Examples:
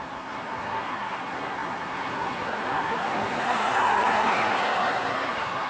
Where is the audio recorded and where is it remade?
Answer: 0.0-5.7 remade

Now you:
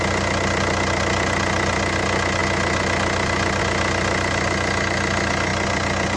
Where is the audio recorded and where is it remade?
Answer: 0.0-6.2 recorded

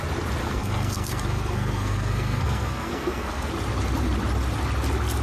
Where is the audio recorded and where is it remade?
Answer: 0.0-0.4 recorded; 0.4-3.5 remade; 3.5-5.2 recorded

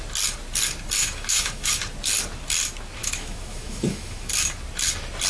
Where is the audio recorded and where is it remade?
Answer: 0.0-1.0 recorded; 1.0-1.7 remade; 1.7-3.0 recorded; 3.0-4.3 remade; 4.3-5.3 recorded

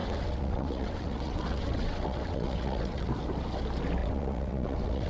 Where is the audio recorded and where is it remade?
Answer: 0.0-3.1 remade; 3.1-4.0 recorded; 4.0-5.1 remade

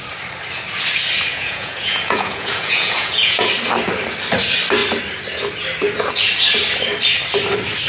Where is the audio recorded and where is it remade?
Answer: 0.0-1.3 recorded; 1.3-3.5 remade; 3.5-7.9 recorded